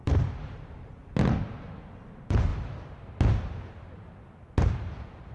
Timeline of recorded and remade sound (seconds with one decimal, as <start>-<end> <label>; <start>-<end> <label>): 0.0-1.0 remade; 1.0-1.6 recorded; 1.6-2.5 remade; 2.5-4.7 recorded; 4.7-5.3 remade